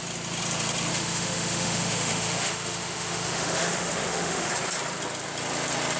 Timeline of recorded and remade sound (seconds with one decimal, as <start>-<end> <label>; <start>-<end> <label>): 0.0-0.9 recorded; 0.9-4.5 remade; 4.5-6.0 recorded